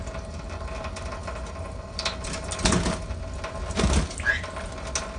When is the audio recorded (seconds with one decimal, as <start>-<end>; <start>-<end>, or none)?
0.0-5.2